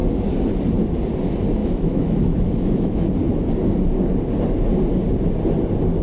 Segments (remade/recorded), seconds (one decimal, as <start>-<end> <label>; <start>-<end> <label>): 0.0-1.6 recorded; 1.6-3.1 remade; 3.1-6.0 recorded